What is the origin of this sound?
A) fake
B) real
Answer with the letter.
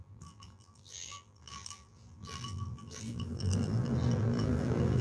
A